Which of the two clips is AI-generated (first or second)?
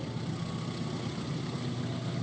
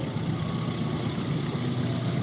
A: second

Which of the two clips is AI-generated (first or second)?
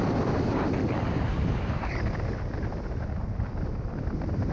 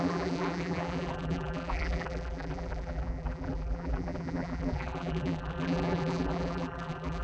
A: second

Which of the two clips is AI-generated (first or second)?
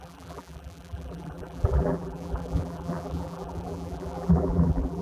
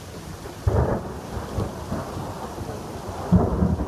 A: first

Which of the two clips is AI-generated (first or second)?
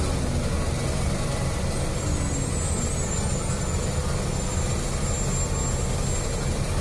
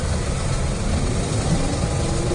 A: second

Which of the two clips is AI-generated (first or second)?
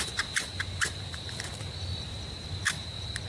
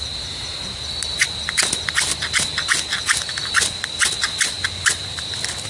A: first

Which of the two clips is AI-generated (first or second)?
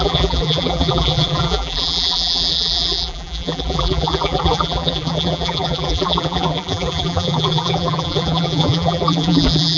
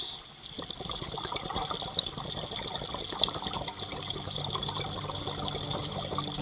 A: first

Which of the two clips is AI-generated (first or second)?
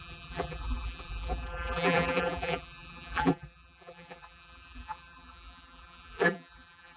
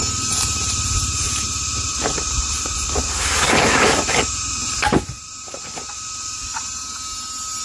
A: first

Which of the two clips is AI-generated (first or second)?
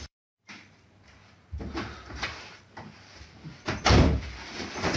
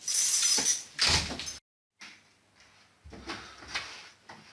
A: first